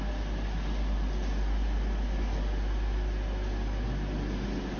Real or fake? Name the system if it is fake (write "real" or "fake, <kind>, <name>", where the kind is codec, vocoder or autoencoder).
real